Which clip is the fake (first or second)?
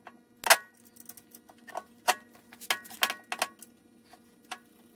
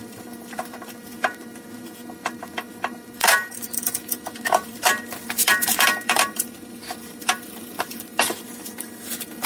second